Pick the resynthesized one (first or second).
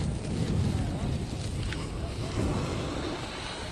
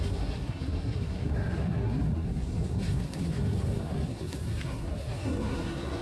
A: second